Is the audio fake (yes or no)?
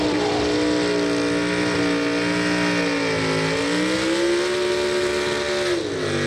no